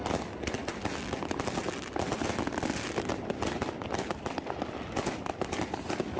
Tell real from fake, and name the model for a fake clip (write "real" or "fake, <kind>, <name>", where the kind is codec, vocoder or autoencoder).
real